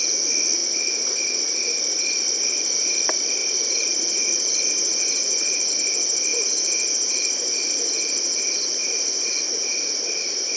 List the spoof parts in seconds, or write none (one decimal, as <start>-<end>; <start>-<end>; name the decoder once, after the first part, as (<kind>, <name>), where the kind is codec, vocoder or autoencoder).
3.4-5.7 (vocoder, BigVGAN v2); 6.3-9.4